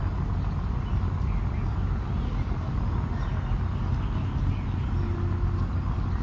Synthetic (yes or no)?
no